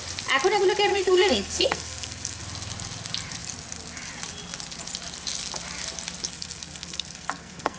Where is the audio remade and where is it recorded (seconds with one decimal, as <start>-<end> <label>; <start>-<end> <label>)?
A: 0.0-0.9 recorded; 0.9-2.4 remade; 2.4-6.3 recorded; 6.3-7.8 remade